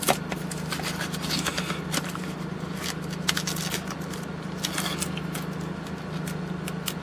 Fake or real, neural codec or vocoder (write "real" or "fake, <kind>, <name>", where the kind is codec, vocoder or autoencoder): real